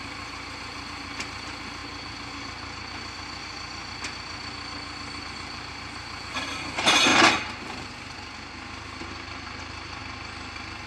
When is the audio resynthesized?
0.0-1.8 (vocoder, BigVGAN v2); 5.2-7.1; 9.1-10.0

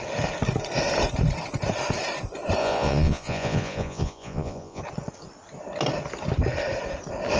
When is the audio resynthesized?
2.6-4.8 (vocoder, Vocos)

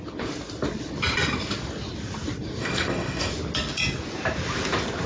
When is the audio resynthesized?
2.6-3.3 (codec, SNAC)

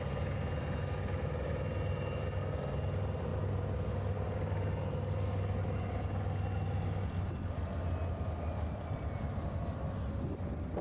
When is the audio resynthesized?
none

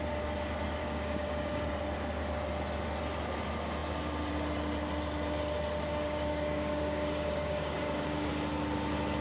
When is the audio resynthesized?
0.8-1.7 (codec, DAC); 5.9-8.3